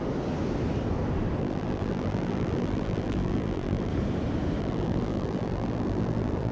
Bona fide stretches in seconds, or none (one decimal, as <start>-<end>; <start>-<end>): 0.0-1.4; 3.9-4.6